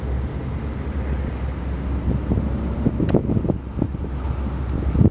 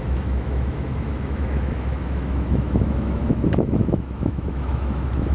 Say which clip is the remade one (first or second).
second